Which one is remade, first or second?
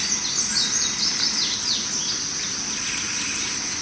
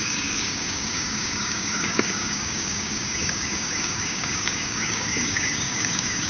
second